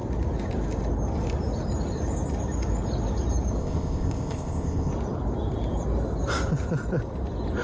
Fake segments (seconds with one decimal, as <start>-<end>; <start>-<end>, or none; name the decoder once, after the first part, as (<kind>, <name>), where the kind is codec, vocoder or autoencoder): 3.6-4.9 (codec, ZipCodec)